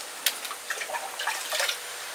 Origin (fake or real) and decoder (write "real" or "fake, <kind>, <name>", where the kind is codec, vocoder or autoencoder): real